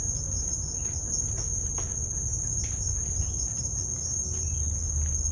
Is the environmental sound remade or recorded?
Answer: recorded